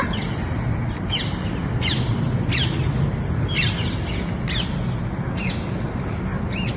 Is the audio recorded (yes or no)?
yes